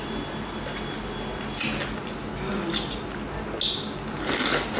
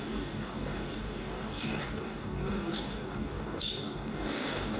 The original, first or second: first